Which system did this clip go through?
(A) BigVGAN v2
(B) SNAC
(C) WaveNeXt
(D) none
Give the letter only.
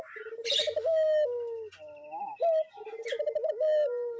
D